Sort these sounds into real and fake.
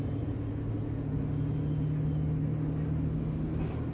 real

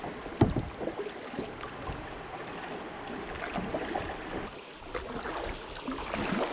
real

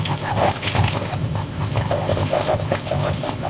fake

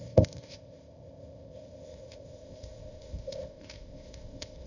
fake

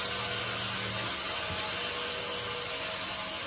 real